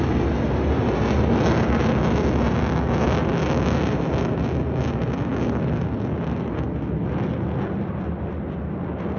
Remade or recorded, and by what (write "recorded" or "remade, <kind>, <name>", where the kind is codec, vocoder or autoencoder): recorded